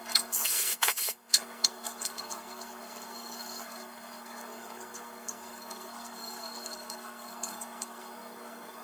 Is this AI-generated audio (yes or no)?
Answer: yes